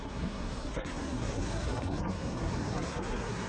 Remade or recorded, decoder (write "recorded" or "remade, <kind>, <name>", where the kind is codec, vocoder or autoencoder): remade, codec, SNAC